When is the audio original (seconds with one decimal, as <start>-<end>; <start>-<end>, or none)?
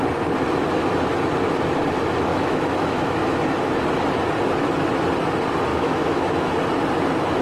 0.0-2.3; 3.6-5.7; 6.5-7.4